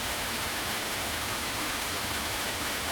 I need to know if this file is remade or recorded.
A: remade